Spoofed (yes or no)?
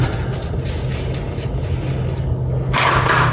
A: no